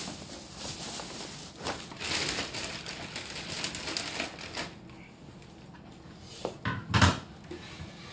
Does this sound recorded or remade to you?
recorded